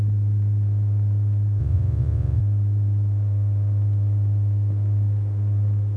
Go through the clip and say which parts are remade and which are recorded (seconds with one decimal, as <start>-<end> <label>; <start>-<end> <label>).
0.0-1.6 recorded; 1.6-2.4 remade; 2.4-6.0 recorded